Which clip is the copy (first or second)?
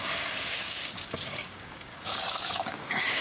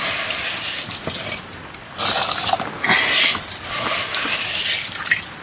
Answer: first